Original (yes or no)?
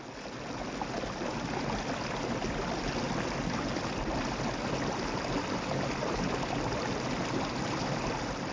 yes